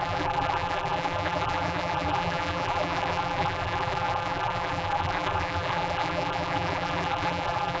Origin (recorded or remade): remade